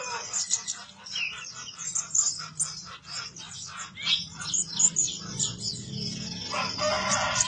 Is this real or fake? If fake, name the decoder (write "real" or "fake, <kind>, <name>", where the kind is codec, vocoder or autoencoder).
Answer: real